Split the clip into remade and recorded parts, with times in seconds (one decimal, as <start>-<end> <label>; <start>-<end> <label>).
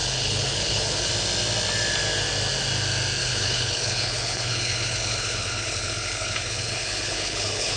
0.0-1.1 remade; 1.1-3.2 recorded; 3.2-7.8 remade